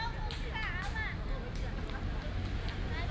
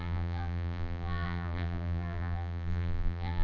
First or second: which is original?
first